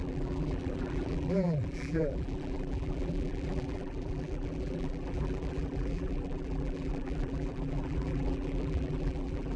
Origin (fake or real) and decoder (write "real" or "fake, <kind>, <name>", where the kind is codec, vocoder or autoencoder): fake, vocoder, BigVGAN v2